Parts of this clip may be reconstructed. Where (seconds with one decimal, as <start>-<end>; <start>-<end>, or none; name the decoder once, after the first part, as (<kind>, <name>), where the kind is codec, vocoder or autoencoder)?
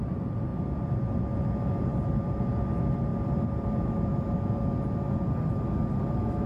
none